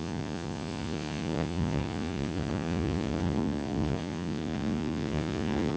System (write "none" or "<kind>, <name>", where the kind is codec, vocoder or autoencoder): vocoder, Vocos